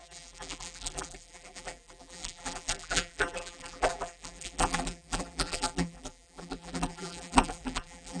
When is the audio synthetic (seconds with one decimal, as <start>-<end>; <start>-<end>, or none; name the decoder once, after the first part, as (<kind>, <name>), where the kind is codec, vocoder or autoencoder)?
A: 0.0-8.2 (vocoder, BigVGAN v2)